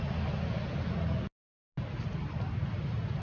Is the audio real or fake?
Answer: real